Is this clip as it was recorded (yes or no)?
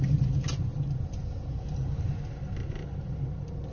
yes